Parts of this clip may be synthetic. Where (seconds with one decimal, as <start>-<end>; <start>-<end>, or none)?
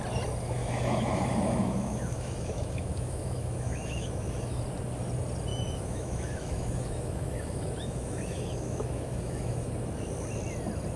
0.6-4.6; 5.5-9.7